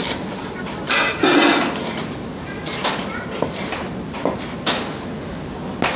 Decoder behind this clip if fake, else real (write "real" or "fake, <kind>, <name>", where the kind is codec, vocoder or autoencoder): real